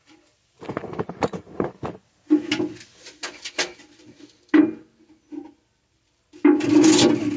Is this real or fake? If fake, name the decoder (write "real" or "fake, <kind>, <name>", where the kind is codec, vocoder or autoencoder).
real